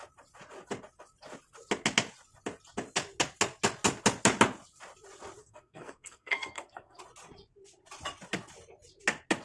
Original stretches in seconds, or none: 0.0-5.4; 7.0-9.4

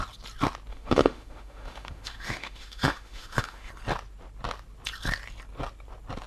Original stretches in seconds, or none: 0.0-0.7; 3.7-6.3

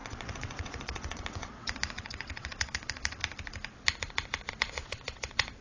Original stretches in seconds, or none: 3.2-4.5